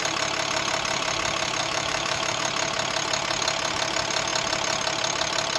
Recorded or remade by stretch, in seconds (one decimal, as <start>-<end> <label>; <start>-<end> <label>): 0.0-1.6 recorded; 1.6-2.4 remade; 2.4-5.6 recorded